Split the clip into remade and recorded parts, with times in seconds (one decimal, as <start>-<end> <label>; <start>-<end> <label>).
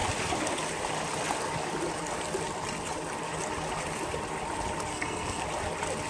0.0-4.9 recorded; 4.9-5.4 remade; 5.4-6.1 recorded